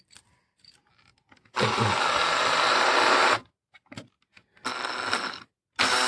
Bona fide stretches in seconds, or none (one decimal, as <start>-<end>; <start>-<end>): 0.0-6.1